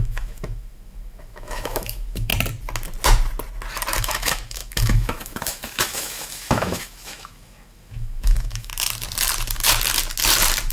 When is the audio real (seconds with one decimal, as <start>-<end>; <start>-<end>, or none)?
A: 2.3-4.0; 8.7-10.7